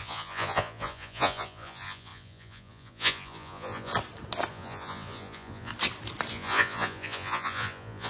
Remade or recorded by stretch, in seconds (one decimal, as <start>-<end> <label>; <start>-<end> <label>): 0.0-3.9 remade; 3.9-4.5 recorded; 4.5-5.7 remade; 5.7-6.3 recorded; 6.3-8.1 remade